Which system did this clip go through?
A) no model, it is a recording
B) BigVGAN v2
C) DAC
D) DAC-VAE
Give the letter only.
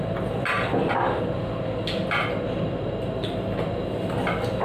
A